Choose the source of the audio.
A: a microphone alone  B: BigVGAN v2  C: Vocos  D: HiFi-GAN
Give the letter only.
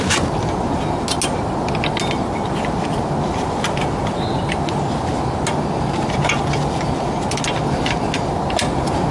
A